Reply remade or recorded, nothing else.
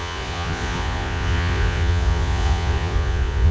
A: remade